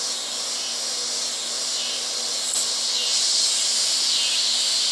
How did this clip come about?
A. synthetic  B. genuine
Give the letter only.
B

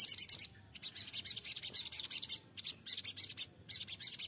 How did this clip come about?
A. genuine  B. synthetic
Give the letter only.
A